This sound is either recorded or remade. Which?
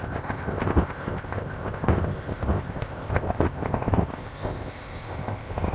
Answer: remade